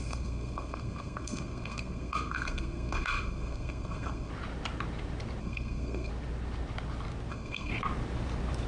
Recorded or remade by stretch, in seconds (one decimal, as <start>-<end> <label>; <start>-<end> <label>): 0.0-4.3 remade; 4.3-5.4 recorded; 5.4-6.1 remade; 6.1-7.3 recorded; 7.3-7.7 remade; 7.7-8.7 recorded